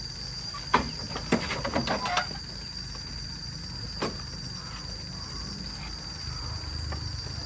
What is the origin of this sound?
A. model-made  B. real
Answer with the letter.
B